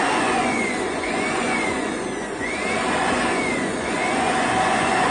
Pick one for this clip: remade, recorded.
remade